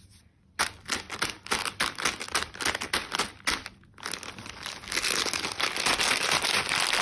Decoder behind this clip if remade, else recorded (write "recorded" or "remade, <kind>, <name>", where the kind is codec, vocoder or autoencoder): recorded